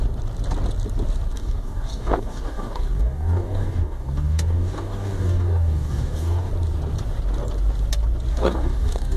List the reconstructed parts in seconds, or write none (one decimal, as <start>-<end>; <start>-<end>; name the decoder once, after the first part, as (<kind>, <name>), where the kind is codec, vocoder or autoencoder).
1.3-6.5 (codec, DAC); 8.3-9.2